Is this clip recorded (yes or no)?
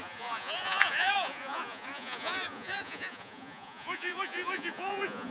no